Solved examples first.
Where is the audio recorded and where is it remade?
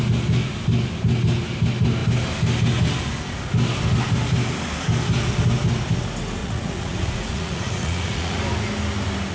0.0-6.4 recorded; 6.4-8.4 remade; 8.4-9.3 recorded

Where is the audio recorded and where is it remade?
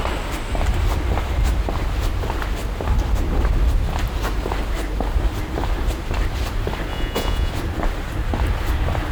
0.0-6.9 recorded; 6.9-7.5 remade; 7.5-9.1 recorded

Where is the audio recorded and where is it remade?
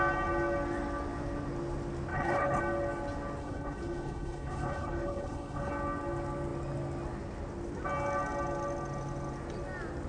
0.0-2.1 recorded; 2.1-2.6 remade; 2.6-3.4 recorded; 3.4-5.7 remade; 5.7-10.1 recorded